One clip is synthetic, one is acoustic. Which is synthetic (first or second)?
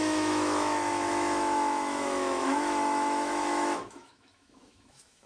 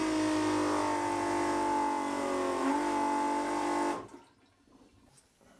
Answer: first